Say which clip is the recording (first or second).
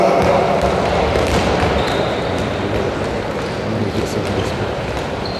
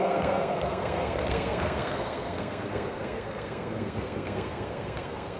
first